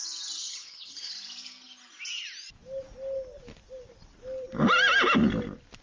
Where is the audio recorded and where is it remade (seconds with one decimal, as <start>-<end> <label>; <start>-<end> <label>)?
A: 0.0-0.4 recorded; 0.4-1.1 remade; 1.1-5.8 recorded